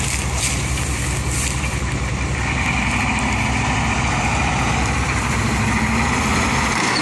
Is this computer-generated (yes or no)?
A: no